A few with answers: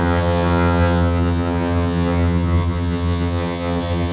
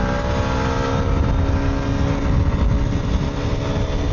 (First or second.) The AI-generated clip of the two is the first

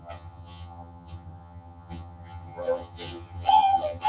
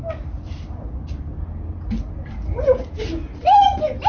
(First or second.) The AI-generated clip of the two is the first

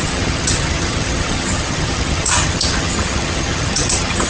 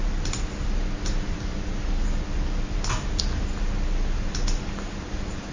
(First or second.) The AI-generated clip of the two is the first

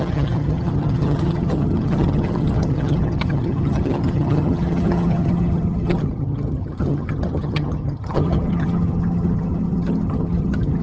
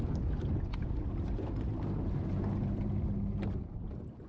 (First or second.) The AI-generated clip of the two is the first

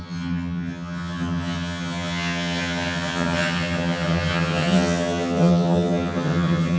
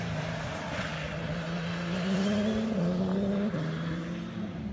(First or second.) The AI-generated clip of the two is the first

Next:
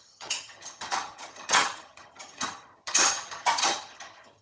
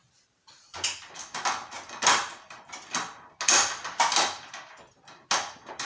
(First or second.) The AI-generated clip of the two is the first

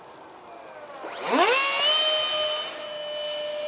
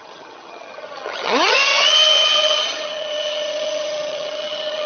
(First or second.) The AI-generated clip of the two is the second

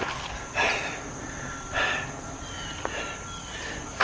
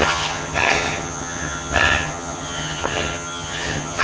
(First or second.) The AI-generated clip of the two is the second